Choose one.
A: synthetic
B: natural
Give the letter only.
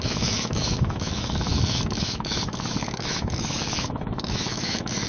A